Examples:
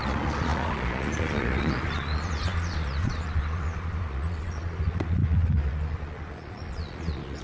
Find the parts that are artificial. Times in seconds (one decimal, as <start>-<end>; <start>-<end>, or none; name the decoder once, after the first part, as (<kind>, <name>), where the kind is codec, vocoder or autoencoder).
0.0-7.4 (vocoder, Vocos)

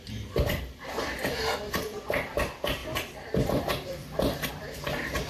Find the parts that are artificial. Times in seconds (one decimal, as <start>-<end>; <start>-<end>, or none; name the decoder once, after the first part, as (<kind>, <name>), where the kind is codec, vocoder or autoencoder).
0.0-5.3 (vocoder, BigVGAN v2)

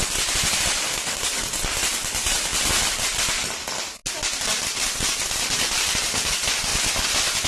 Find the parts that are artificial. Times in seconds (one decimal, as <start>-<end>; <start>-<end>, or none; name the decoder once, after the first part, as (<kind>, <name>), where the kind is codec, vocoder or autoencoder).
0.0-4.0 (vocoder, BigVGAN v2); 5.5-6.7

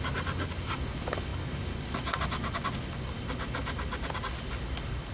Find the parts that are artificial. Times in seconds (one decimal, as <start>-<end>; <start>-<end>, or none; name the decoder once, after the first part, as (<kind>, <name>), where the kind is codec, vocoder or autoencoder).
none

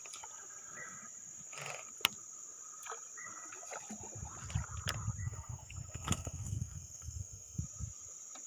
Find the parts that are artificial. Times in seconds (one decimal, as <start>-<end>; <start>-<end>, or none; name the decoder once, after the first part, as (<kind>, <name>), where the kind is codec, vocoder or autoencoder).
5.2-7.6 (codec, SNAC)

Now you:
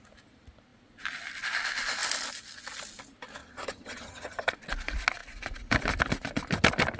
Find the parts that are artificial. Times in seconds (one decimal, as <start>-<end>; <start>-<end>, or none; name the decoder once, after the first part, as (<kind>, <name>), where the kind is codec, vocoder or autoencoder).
3.4-4.5 (vocoder, HiFi-GAN)

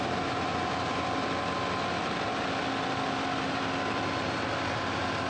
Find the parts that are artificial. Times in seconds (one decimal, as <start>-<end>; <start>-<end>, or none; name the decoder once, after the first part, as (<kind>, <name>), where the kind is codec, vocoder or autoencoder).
none